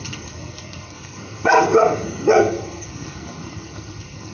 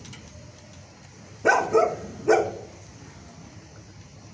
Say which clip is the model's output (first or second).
first